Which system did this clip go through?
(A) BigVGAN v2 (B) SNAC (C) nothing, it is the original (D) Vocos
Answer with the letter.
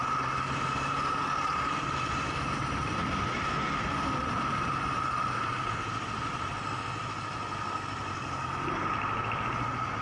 C